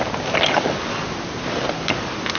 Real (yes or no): yes